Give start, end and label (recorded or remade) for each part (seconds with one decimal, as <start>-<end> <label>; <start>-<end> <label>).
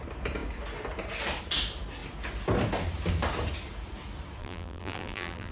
0.0-4.4 recorded; 4.4-5.5 remade